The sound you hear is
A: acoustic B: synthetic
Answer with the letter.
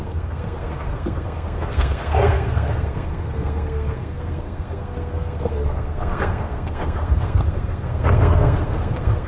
B